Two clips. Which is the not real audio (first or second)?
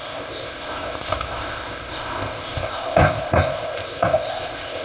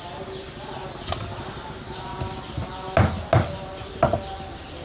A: first